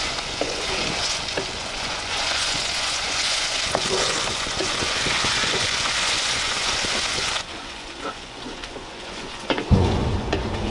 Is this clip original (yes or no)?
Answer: no